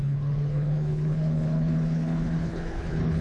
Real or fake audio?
fake